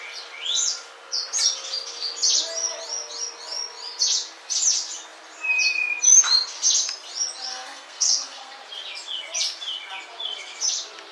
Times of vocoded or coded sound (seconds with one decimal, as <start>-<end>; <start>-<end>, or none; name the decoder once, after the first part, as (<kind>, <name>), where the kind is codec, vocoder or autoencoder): 7.5-8.5 (codec, SNAC)